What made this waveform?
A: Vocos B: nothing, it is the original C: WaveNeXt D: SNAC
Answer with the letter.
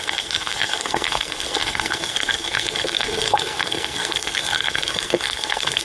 D